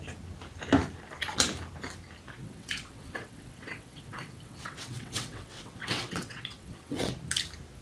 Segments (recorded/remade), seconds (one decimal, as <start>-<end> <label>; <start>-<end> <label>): 0.0-2.4 recorded; 2.4-7.1 remade; 7.1-7.8 recorded